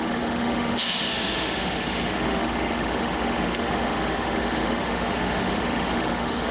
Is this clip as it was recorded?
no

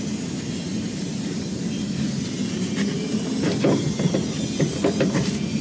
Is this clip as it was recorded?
yes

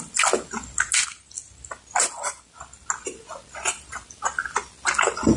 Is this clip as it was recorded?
yes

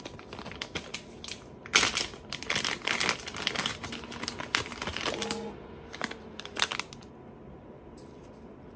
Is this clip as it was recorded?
yes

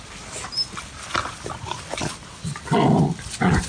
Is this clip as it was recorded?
yes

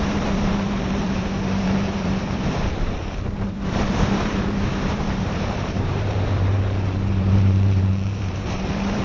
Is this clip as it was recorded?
no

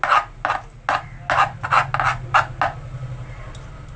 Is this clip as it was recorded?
yes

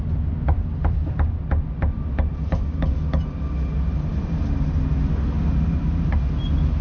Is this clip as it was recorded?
yes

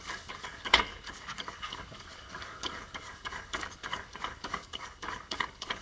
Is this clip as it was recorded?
no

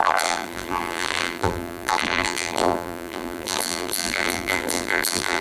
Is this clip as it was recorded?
no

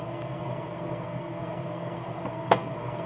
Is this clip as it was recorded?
no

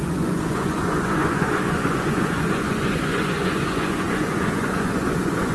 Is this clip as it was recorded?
no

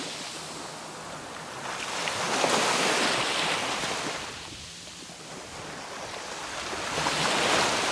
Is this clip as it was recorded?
yes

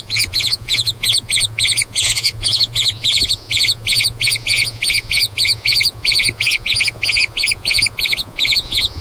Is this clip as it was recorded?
no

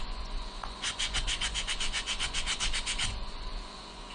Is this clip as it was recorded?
no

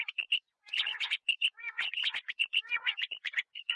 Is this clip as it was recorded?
no